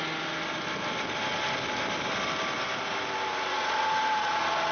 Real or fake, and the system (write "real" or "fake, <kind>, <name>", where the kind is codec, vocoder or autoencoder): real